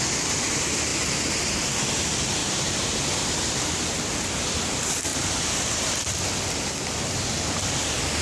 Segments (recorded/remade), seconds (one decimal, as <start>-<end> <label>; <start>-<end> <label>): 0.0-0.9 recorded; 0.9-1.8 remade; 1.8-2.4 recorded; 2.4-3.0 remade; 3.0-8.2 recorded